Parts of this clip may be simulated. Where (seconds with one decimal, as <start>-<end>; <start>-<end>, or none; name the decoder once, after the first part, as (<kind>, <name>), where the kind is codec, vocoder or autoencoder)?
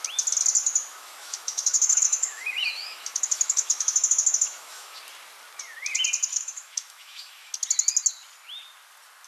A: 0.9-5.0 (autoencoder, DAC-VAE); 6.3-7.5